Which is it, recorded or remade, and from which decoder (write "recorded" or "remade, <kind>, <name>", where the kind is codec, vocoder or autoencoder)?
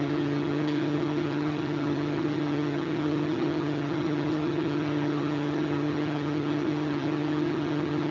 remade, vocoder, HiFi-GAN